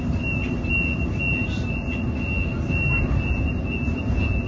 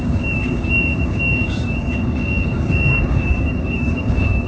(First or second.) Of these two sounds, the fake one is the second